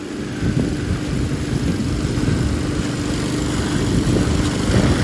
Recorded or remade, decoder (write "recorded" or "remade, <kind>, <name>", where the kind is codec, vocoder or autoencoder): recorded